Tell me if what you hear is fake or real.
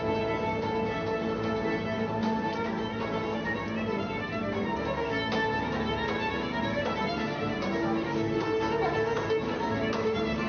real